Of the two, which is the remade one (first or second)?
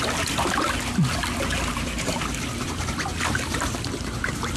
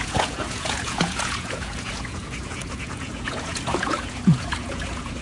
second